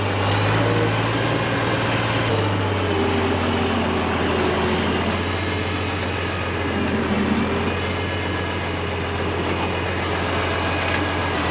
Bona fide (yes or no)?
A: yes